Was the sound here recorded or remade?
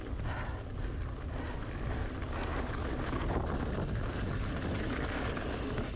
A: recorded